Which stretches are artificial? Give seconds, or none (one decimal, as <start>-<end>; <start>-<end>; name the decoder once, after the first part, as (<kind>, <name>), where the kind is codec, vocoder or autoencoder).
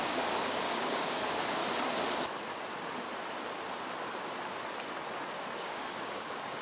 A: 0.0-1.6 (codec, DAC); 5.6-6.6